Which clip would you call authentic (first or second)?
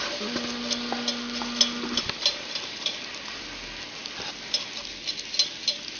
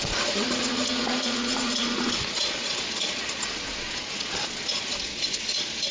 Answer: first